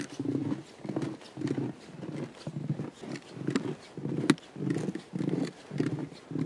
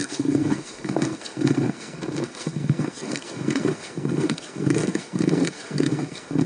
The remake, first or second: second